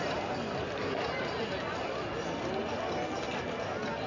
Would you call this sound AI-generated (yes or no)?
no